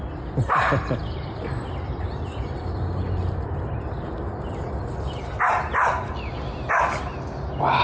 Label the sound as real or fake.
real